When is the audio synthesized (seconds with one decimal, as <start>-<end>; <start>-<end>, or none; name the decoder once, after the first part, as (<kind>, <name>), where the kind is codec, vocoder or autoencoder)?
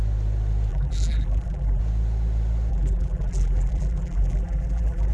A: 0.7-1.8 (vocoder, BigVGAN v2); 2.7-5.1